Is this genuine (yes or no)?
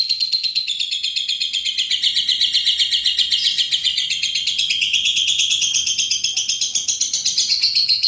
no